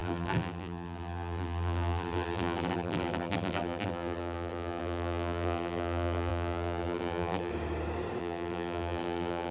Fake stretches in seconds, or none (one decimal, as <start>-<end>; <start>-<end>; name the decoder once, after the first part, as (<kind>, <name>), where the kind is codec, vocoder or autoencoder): 0.0-7.5 (vocoder, BigVGAN v2); 8.2-9.5